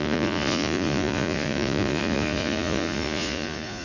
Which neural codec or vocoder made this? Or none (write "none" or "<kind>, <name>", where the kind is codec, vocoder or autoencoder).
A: vocoder, Vocos